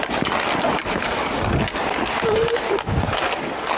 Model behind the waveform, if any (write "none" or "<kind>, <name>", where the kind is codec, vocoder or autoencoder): none